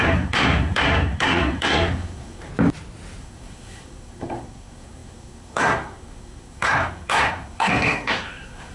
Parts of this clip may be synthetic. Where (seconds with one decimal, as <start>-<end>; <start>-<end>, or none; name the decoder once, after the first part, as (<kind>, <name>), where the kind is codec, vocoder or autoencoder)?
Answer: 0.0-2.5 (codec, SNAC); 3.2-8.7